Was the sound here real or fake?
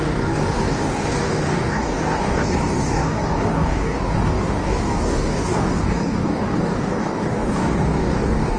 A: fake